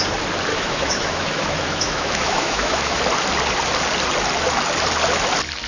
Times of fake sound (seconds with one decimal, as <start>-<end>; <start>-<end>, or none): 0.5-3.0